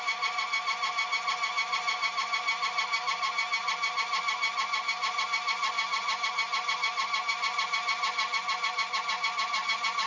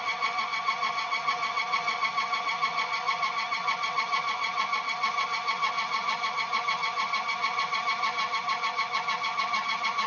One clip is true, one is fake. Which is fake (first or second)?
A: second